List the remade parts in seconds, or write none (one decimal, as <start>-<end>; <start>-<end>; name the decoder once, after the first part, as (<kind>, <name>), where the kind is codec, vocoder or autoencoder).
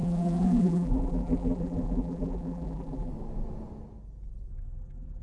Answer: 0.0-3.1 (vocoder, BigVGAN v2); 4.5-5.2